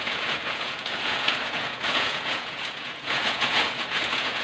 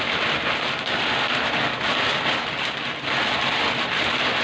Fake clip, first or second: first